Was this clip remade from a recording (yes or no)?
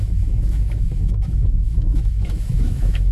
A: yes